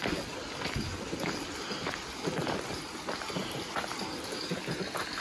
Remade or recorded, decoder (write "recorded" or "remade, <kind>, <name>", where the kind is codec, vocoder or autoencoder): recorded